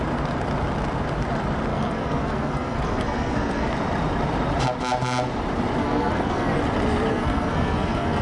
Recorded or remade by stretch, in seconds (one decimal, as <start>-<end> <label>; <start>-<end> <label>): 0.0-1.7 recorded; 1.7-3.7 remade; 3.7-5.8 recorded; 5.8-6.6 remade; 6.6-7.1 recorded; 7.1-8.2 remade